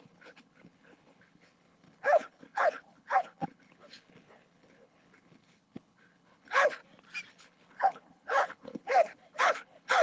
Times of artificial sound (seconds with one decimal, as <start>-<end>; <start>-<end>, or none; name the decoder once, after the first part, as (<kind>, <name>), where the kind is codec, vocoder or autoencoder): 0.0-6.8 (codec, HILCodec); 7.3-10.0